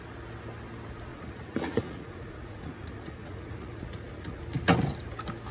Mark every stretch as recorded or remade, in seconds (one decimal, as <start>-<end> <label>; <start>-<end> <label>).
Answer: 0.0-1.1 recorded; 1.1-4.4 remade; 4.4-5.5 recorded